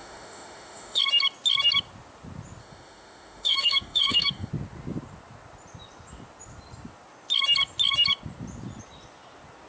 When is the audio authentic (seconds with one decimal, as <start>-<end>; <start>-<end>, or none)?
1.0-2.6; 4.5-9.7